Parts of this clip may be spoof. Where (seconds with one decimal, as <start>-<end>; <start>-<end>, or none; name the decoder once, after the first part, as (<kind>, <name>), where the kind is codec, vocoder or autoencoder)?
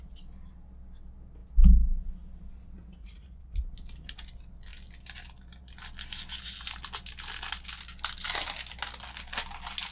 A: 3.0-3.6 (vocoder, Vocos)